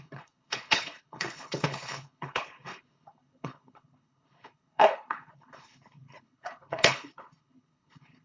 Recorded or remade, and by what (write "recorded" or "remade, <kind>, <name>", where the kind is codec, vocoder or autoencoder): remade, codec, HILCodec